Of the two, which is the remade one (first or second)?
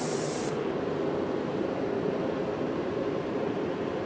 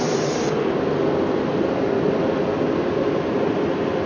first